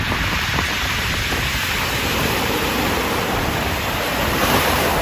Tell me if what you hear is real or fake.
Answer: fake